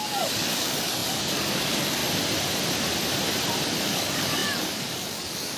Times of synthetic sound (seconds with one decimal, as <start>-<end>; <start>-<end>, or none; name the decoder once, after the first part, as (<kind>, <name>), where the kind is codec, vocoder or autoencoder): 0.0-2.0 (codec, DAC); 3.8-5.6